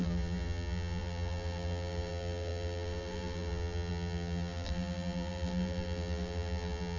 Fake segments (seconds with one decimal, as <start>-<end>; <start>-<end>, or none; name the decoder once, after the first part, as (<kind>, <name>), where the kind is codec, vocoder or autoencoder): 0.0-7.0 (vocoder, BigVGAN v2)